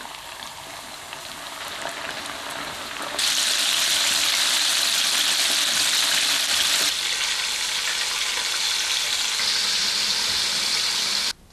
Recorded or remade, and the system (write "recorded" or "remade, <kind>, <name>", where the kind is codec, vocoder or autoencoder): recorded